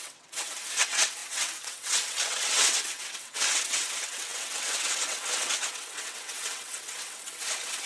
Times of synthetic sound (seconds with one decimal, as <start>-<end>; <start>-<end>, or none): 0.0-7.9